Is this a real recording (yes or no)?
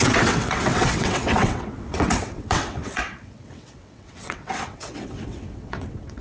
no